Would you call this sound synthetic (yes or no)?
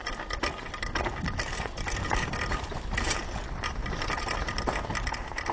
no